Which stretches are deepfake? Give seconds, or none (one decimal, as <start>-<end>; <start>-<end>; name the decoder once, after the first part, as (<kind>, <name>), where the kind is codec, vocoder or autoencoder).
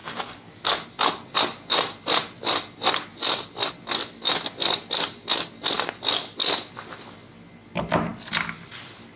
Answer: 0.0-0.8 (codec, DAC)